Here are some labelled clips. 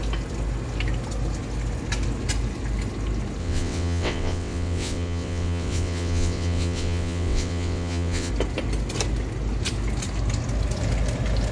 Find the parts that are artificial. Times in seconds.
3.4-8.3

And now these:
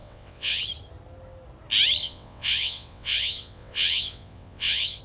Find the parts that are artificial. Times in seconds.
0.0-0.6; 2.0-5.0

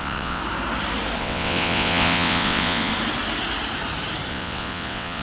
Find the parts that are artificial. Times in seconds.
0.0-0.4; 1.2-2.9; 4.3-5.2